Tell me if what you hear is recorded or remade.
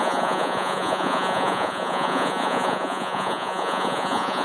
remade